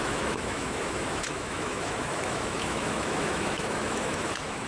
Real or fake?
fake